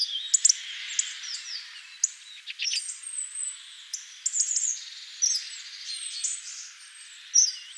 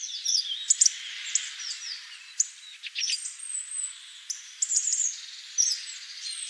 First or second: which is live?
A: first